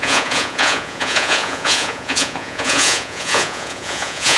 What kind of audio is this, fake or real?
fake